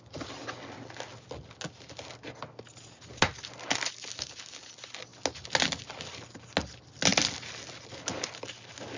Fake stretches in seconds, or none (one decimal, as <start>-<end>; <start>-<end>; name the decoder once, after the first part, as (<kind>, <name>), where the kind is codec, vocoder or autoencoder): none